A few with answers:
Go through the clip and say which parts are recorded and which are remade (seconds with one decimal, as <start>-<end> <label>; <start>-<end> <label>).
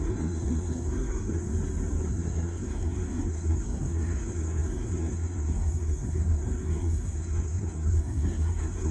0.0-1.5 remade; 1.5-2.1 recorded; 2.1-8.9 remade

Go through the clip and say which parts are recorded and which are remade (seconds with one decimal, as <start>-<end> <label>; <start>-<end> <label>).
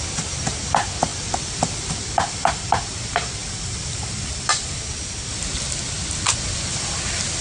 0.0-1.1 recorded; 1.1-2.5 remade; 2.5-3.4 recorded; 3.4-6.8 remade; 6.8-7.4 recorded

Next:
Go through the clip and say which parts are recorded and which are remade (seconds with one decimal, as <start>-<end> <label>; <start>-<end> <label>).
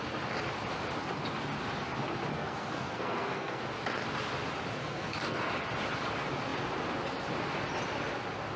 0.0-2.3 recorded; 2.3-3.6 remade; 3.6-4.8 recorded; 4.8-5.5 remade; 5.5-8.6 recorded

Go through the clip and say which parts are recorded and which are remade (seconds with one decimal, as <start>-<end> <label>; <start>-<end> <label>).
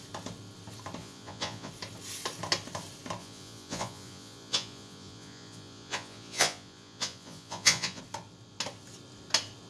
0.0-1.0 recorded; 1.0-1.7 remade; 1.7-3.2 recorded; 3.2-8.0 remade; 8.0-9.7 recorded